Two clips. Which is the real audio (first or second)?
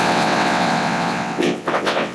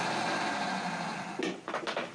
second